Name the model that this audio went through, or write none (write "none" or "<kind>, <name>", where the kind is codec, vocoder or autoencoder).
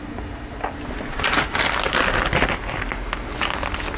none